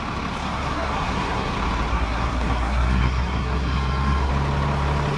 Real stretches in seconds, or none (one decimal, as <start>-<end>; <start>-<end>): 0.0-0.4; 1.5-1.9; 4.3-5.2